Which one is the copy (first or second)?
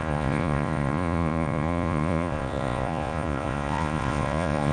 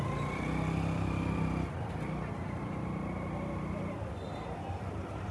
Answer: first